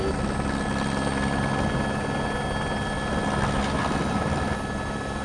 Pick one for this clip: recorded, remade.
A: recorded